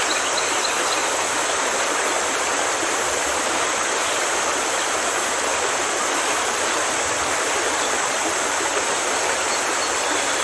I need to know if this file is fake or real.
fake